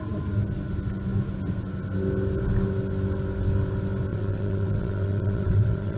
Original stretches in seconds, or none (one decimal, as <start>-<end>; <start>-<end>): 0.0-4.1